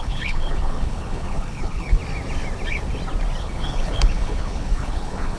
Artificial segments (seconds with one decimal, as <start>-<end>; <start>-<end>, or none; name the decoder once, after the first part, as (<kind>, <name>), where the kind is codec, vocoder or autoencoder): 0.0-2.0 (codec, HILCodec); 3.4-5.4